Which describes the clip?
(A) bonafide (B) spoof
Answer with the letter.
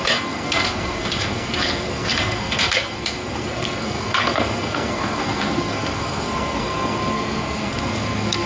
B